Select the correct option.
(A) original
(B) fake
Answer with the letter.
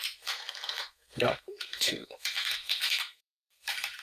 B